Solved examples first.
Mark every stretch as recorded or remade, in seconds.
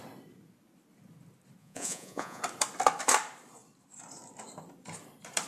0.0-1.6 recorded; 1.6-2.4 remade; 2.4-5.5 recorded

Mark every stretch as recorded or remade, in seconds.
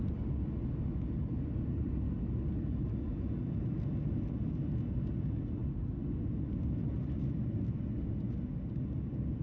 0.0-9.4 recorded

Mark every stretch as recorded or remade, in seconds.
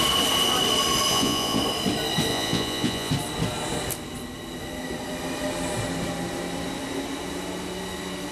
0.0-1.1 recorded; 1.1-1.6 remade; 1.6-2.3 recorded; 2.3-3.1 remade; 3.1-8.3 recorded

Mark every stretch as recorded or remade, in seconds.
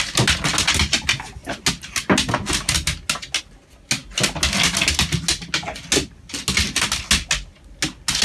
0.0-8.2 recorded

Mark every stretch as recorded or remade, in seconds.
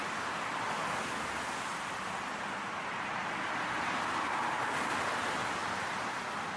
0.0-5.6 recorded; 5.6-6.6 remade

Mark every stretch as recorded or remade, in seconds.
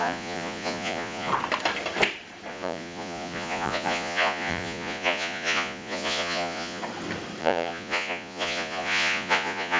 0.0-1.3 remade; 1.3-2.5 recorded; 2.5-6.8 remade; 6.8-7.4 recorded; 7.4-9.8 remade